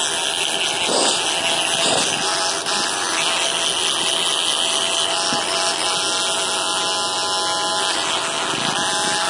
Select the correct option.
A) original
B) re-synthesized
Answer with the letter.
A